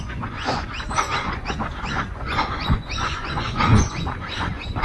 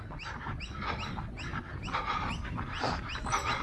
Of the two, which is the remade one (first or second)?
first